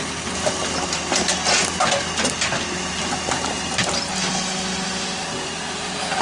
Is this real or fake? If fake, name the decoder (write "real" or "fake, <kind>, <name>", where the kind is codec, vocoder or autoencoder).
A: real